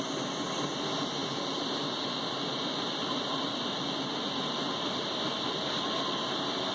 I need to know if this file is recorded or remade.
recorded